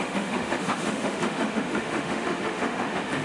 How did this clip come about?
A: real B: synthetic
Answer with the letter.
B